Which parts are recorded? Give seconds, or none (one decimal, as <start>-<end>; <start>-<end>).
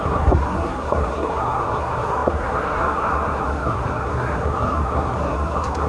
none